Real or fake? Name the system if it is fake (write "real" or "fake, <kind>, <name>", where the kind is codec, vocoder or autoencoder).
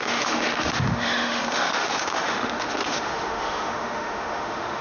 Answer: fake, autoencoder, DAC-VAE